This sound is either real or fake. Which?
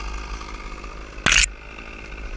real